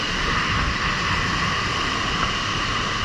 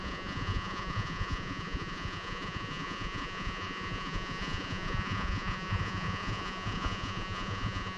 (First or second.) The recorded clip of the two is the first